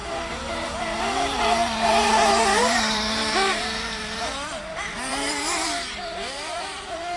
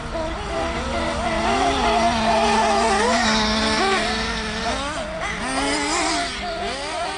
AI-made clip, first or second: first